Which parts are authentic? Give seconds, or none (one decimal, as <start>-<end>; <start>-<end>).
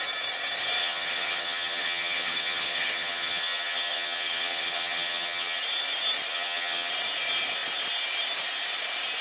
0.0-0.8; 5.6-6.3; 6.9-9.2